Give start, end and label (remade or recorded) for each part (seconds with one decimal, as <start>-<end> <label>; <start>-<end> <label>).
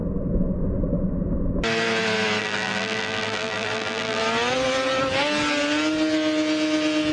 0.0-2.4 recorded; 2.4-4.2 remade; 4.2-7.1 recorded